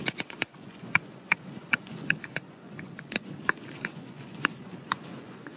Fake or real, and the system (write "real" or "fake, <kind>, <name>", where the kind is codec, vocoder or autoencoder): fake, vocoder, Vocos